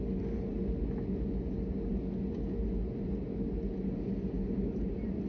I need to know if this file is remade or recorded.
recorded